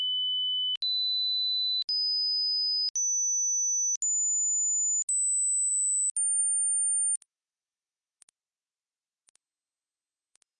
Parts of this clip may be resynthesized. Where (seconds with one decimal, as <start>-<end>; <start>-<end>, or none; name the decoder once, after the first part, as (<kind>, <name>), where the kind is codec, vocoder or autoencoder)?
none